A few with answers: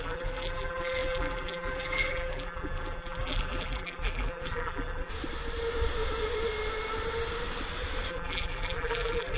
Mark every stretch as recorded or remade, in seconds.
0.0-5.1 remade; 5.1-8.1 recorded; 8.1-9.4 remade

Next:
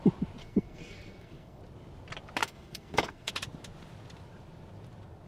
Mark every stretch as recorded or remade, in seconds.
0.0-0.4 recorded; 0.4-1.6 remade; 1.6-2.4 recorded; 2.4-3.3 remade; 3.3-5.3 recorded